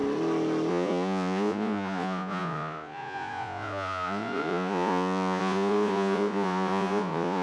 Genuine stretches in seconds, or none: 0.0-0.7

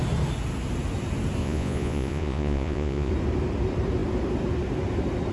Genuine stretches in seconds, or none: 0.0-1.4; 3.1-5.3